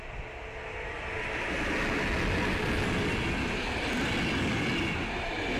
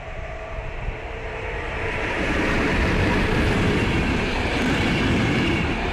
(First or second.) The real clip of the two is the first